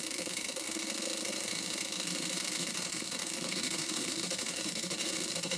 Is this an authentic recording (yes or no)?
no